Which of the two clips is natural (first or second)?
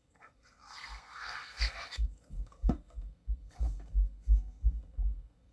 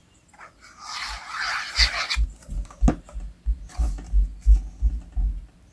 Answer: second